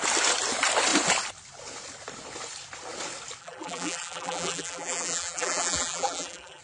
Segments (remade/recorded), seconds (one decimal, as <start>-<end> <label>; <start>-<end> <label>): 0.0-3.4 recorded; 3.4-6.6 remade